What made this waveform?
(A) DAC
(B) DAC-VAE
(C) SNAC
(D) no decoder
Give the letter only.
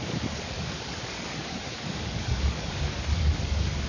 A